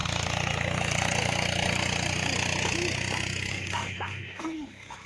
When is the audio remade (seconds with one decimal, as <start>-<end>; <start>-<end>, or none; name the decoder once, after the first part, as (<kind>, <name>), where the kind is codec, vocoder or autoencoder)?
3.5-5.1 (autoencoder, DAC-VAE)